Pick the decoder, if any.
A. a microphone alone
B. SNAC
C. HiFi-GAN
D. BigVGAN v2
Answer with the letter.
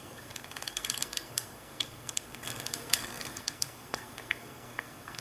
B